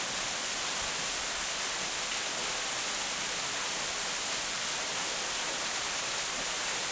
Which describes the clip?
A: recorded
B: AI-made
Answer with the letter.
A